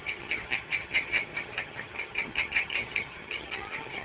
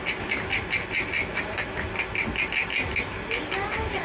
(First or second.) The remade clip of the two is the first